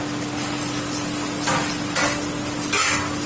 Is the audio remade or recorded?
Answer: recorded